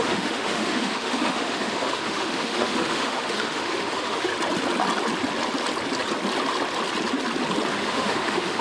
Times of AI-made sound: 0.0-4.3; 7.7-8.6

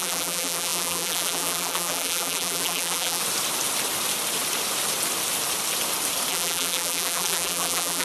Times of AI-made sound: 0.0-3.2; 6.3-8.0

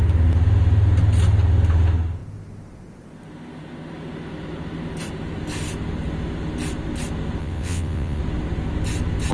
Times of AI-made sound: 7.4-8.2

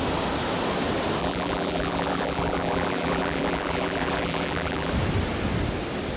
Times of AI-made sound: 1.2-4.9

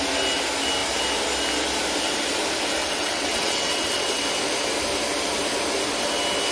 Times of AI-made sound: 2.8-4.2